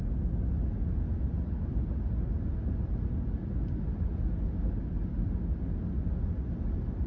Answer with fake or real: real